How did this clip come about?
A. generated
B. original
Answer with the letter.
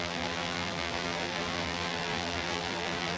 A